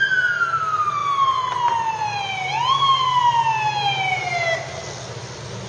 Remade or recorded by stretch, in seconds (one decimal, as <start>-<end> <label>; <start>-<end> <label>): 0.0-5.7 recorded

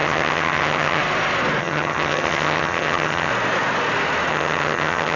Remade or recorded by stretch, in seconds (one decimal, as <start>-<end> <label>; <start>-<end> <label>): 0.0-1.0 remade; 1.0-1.6 recorded; 1.6-3.3 remade; 3.3-4.3 recorded; 4.3-5.2 remade

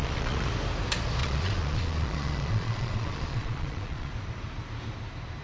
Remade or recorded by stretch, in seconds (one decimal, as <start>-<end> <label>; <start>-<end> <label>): 0.0-0.5 remade; 0.5-1.2 recorded; 1.2-4.1 remade; 4.1-5.4 recorded

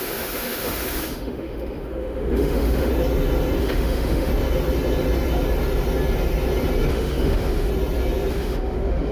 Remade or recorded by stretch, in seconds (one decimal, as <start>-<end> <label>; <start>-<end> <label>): 0.0-2.9 remade; 2.9-3.6 recorded; 3.6-4.3 remade; 4.3-6.9 recorded; 6.9-7.7 remade; 7.7-8.3 recorded; 8.3-9.1 remade

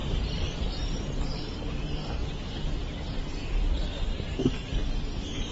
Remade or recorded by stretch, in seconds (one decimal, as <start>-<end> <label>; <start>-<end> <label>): 0.0-2.2 remade; 2.2-4.1 recorded; 4.1-5.5 remade